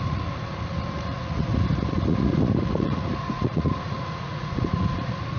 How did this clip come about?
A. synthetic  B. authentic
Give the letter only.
A